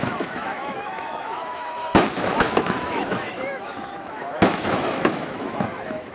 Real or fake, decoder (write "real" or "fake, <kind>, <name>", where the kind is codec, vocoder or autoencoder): fake, autoencoder, DAC-VAE